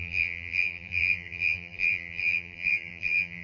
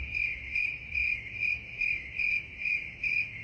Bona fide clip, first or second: second